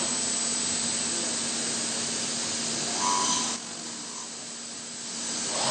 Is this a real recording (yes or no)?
yes